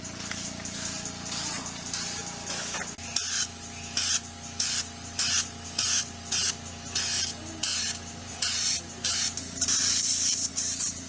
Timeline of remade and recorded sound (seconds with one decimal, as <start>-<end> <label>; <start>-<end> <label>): 0.0-8.2 recorded; 8.2-10.5 remade; 10.5-11.1 recorded